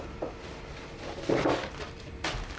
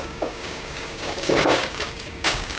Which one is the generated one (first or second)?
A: second